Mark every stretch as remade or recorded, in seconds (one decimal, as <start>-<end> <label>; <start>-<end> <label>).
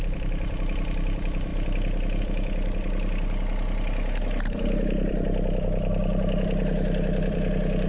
0.0-7.9 remade